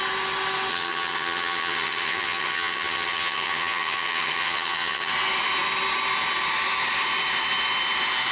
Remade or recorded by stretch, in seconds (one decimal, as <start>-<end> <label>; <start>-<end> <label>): 0.0-0.7 recorded; 0.7-5.1 remade; 5.1-8.3 recorded